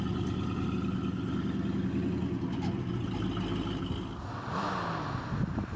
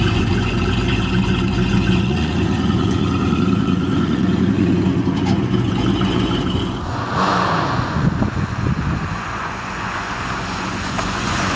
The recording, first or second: first